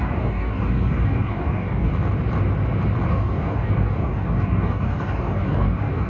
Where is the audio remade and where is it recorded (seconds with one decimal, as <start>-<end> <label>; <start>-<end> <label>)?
0.0-1.9 remade; 1.9-3.1 recorded; 3.1-6.1 remade